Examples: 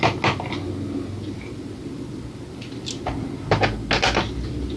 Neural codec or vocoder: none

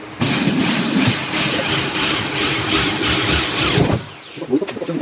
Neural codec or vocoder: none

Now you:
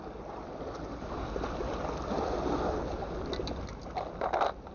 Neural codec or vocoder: none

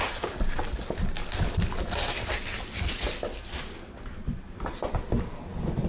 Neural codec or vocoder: none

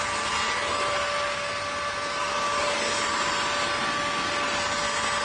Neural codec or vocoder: none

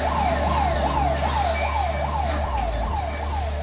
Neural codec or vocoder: none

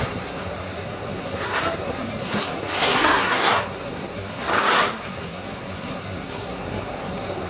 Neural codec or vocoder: codec, SNAC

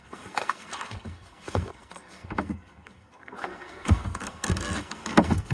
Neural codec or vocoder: codec, SNAC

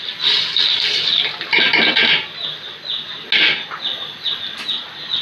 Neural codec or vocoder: none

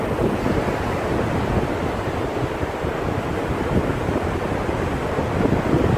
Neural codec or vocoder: none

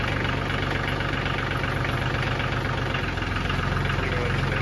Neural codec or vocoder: none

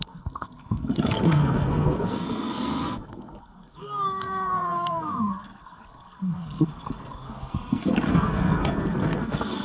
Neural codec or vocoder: codec, SNAC